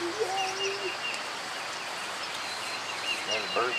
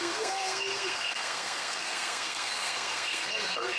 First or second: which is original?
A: first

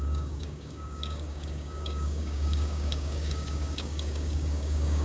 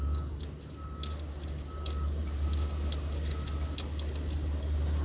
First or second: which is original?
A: second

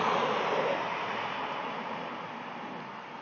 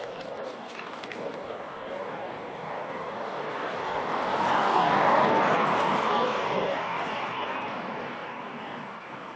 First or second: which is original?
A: first